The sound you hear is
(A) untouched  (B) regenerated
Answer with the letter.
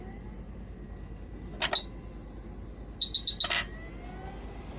A